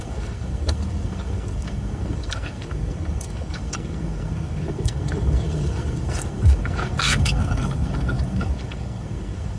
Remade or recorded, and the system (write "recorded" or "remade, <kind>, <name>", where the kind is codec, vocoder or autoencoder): remade, codec, SNAC